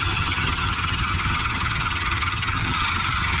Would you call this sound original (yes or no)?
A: no